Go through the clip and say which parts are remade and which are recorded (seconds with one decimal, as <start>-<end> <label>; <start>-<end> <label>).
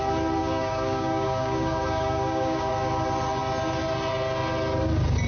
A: 0.0-0.4 recorded; 0.4-2.7 remade; 2.7-5.3 recorded